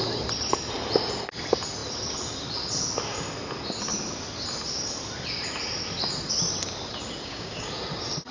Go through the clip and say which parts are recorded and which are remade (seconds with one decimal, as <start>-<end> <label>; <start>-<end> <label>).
0.0-7.2 recorded; 7.2-7.7 remade; 7.7-8.3 recorded